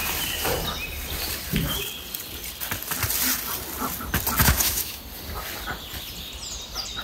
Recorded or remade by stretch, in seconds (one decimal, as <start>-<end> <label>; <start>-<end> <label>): 0.0-4.4 recorded; 4.4-5.0 remade; 5.0-7.0 recorded

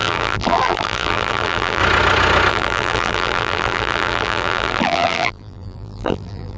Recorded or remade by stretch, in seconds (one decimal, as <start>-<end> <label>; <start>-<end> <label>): 0.0-1.8 remade; 1.8-2.5 recorded; 2.5-6.6 remade

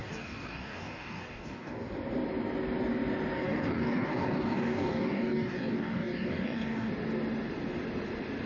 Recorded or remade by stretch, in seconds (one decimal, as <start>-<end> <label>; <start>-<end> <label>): 0.0-1.9 remade; 1.9-3.4 recorded; 3.4-6.9 remade; 6.9-8.5 recorded

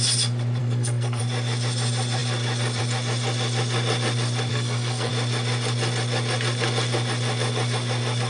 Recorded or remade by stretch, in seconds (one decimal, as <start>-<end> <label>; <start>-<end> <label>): 0.0-0.6 recorded; 0.6-1.2 remade; 1.2-4.5 recorded; 4.5-5.1 remade; 5.1-8.3 recorded

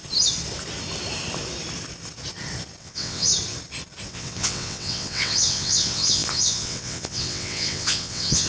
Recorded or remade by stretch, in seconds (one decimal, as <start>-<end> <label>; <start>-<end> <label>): 0.0-2.8 recorded; 2.8-3.3 remade; 3.3-4.1 recorded; 4.1-8.5 remade

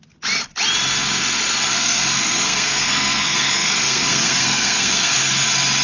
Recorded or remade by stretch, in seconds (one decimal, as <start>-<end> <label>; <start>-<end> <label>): 0.0-1.7 recorded; 1.7-5.2 remade; 5.2-5.8 recorded

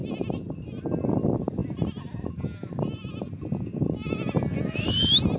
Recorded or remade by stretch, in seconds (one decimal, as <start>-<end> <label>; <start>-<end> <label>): 0.0-5.4 recorded

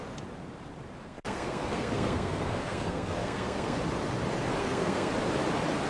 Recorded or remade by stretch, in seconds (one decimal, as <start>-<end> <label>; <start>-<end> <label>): 0.0-1.0 recorded; 1.0-3.8 remade; 3.8-4.6 recorded; 4.6-5.1 remade; 5.1-5.9 recorded